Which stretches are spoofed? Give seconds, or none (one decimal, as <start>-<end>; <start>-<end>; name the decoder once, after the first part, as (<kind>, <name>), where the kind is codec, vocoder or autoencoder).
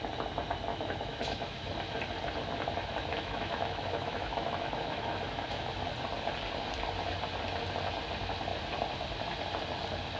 0.7-1.7 (autoencoder, DAC-VAE); 3.1-5.9